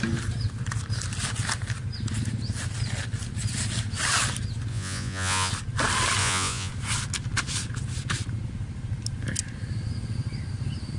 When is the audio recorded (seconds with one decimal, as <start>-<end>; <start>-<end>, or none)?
0.0-4.7; 5.5-6.2; 6.7-11.0